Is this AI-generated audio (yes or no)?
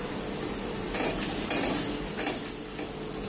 no